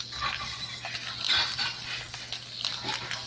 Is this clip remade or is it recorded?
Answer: recorded